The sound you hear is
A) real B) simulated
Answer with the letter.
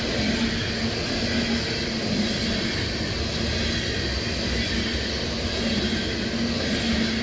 A